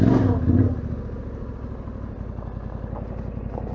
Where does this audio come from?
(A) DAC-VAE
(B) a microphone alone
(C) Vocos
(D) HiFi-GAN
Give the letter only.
B